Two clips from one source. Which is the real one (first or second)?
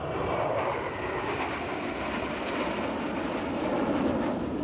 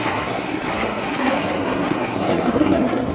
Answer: first